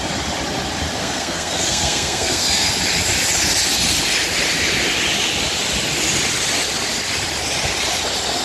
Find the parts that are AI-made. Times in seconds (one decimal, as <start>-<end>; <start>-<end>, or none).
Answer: 1.0-2.7